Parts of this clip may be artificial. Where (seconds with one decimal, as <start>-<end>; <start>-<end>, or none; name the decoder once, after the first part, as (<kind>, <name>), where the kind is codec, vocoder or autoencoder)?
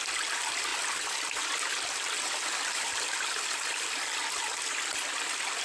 none